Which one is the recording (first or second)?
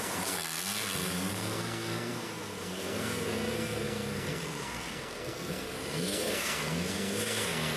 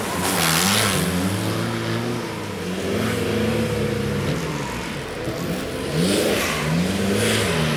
second